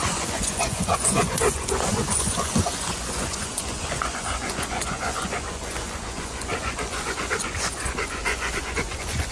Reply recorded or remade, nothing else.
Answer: remade